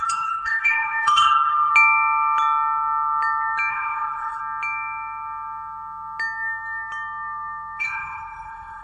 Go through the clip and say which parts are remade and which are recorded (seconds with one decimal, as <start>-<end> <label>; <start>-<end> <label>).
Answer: 0.0-1.7 remade; 1.7-3.7 recorded; 3.7-4.4 remade; 4.4-7.8 recorded; 7.8-8.8 remade

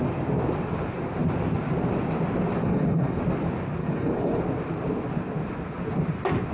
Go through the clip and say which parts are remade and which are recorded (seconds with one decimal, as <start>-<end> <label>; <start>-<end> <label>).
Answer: 0.0-2.6 recorded; 2.6-3.2 remade; 3.2-3.8 recorded; 3.8-4.4 remade; 4.4-6.5 recorded

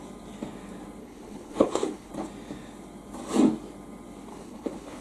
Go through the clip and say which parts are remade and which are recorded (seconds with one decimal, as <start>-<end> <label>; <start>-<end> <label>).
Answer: 0.0-1.0 recorded; 1.0-2.1 remade; 2.1-4.3 recorded; 4.3-5.0 remade

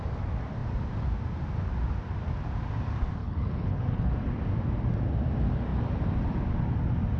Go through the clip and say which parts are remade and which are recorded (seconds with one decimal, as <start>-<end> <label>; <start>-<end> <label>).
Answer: 0.0-3.2 recorded; 3.2-4.1 remade; 4.1-7.2 recorded

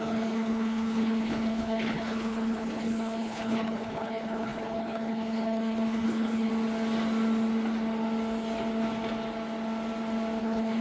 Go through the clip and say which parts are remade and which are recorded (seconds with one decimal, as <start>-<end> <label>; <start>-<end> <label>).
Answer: 0.0-6.5 remade; 6.5-10.4 recorded; 10.4-10.8 remade

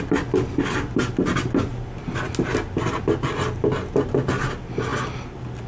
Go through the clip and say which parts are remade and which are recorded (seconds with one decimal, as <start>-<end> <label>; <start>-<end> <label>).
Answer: 0.0-5.7 recorded

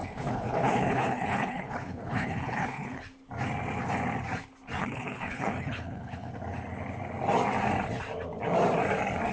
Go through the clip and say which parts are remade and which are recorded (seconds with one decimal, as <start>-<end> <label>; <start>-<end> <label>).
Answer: 0.0-3.0 remade; 3.0-4.8 recorded; 4.8-6.3 remade; 6.3-9.3 recorded